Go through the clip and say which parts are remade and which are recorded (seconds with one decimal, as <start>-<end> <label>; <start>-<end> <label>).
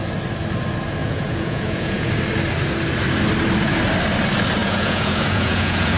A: 0.0-1.0 recorded; 1.0-2.1 remade; 2.1-4.6 recorded; 4.6-6.0 remade